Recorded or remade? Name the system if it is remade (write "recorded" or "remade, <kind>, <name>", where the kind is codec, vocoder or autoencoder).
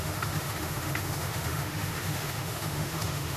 remade, autoencoder, DAC-VAE